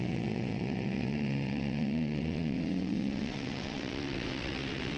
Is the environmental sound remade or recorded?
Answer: remade